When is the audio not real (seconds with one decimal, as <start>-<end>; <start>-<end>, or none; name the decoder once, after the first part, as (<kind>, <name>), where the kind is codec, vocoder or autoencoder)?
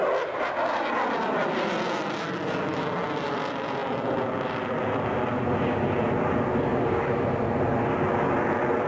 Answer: none